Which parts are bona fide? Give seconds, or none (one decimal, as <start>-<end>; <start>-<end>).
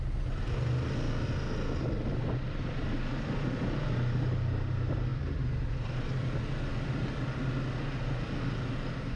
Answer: 0.0-9.2